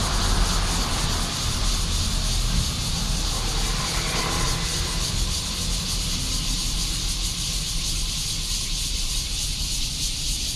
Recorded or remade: recorded